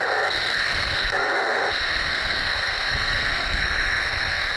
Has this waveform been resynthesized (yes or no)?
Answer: yes